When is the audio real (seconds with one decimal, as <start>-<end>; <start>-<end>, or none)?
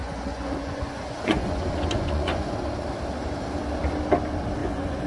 2.5-4.6